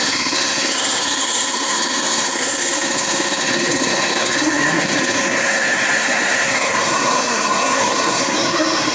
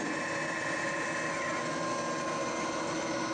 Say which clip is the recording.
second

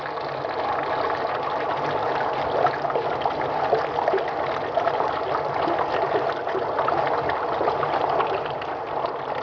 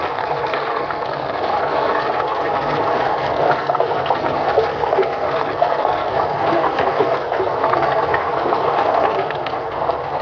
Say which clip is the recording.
first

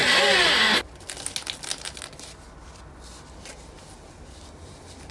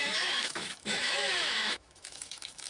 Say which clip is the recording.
first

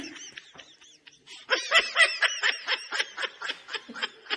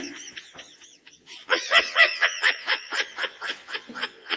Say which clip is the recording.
first